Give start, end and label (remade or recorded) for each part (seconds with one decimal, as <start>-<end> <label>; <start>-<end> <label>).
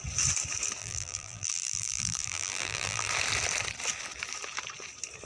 0.0-0.8 recorded; 0.8-3.1 remade; 3.1-5.3 recorded